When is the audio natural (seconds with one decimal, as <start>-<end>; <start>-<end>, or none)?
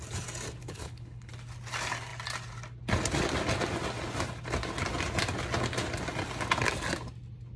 0.0-0.6; 1.3-7.6